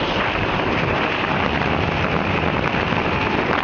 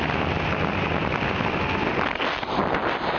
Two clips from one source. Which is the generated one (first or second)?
first